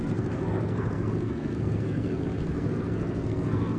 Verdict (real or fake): fake